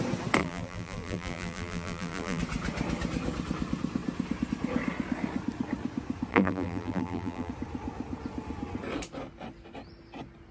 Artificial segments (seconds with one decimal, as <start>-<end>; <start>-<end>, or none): 0.4-2.4; 6.3-7.5